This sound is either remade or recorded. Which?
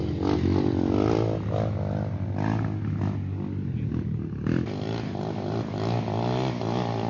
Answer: recorded